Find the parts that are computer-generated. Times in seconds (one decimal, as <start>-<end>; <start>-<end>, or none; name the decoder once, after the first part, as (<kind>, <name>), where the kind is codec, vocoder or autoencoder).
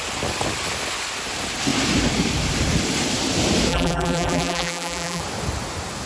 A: 3.7-5.2 (vocoder, BigVGAN v2)